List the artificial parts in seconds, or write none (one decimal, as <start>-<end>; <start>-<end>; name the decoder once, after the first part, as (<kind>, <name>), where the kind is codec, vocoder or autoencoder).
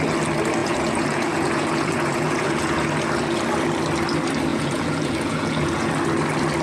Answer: 0.6-2.9 (vocoder, Vocos); 4.5-5.9